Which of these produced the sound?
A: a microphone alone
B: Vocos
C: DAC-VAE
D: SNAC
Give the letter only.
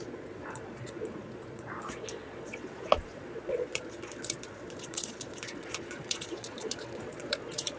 B